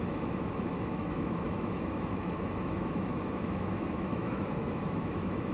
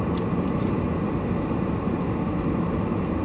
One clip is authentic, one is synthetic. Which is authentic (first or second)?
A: second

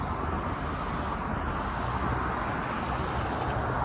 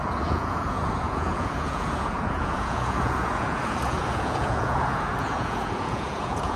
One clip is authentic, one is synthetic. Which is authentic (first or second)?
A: first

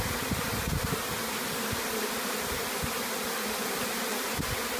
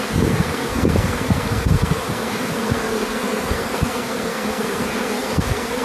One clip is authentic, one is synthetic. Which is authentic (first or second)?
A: first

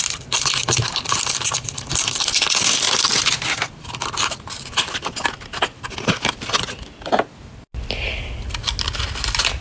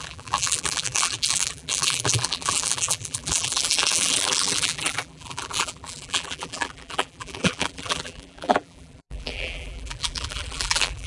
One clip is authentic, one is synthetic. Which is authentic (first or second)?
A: first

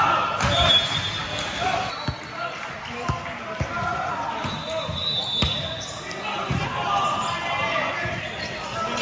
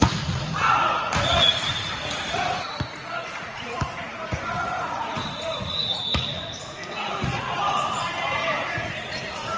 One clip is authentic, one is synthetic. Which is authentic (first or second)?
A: first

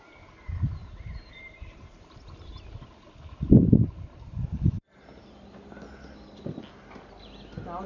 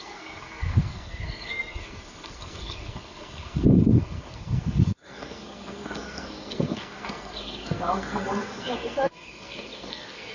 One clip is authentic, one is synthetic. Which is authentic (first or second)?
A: first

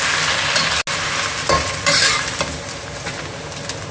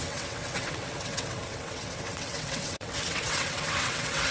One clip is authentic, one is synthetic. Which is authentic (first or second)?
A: first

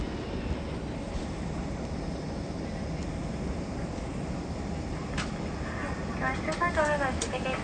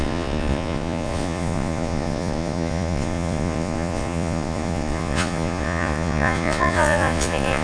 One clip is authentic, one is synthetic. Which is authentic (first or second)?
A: first